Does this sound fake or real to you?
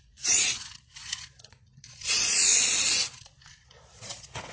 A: fake